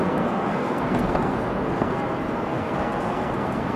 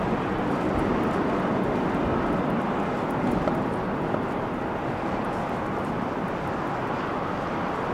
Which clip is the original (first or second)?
second